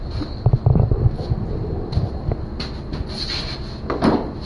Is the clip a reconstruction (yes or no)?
no